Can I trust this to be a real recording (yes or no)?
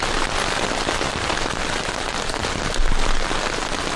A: yes